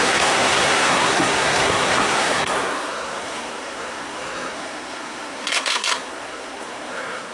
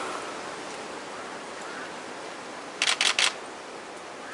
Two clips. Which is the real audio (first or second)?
second